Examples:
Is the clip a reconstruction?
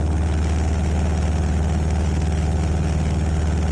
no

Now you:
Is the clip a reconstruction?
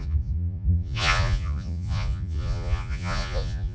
yes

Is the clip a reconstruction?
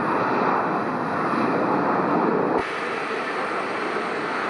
no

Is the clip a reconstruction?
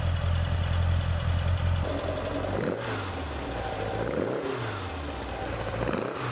no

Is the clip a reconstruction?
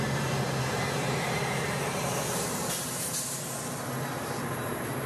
yes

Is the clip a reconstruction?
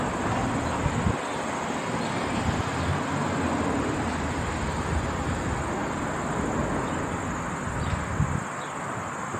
no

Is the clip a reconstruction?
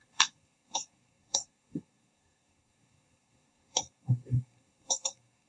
yes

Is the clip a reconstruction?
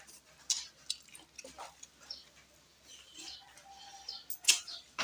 no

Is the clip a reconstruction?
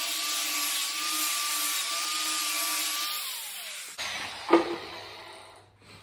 no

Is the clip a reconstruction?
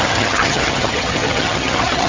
yes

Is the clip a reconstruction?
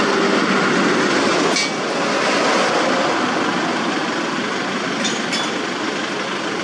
no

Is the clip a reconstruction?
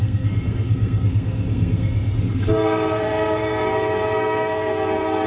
yes